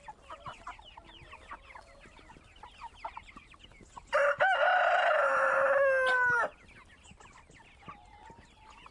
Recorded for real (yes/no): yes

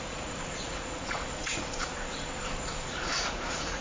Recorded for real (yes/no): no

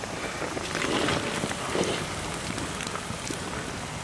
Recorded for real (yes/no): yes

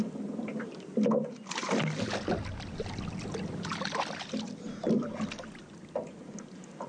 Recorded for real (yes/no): yes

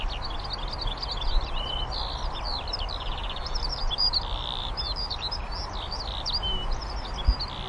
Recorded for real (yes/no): yes